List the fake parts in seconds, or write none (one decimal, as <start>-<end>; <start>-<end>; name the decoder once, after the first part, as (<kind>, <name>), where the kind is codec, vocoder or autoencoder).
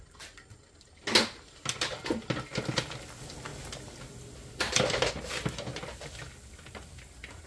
none